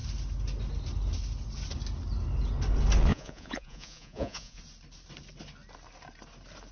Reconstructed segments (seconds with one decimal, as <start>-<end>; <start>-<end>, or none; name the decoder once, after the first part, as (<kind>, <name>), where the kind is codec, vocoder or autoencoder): 3.1-4.6 (vocoder, Vocos)